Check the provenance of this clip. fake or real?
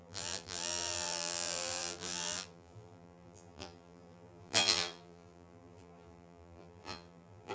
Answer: fake